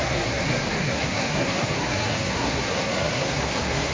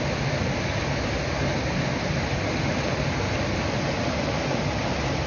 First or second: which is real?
second